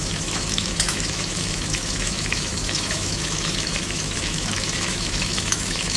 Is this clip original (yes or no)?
no